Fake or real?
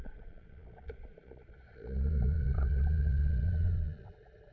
fake